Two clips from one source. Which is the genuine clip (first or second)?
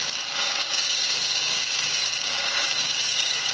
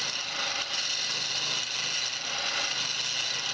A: second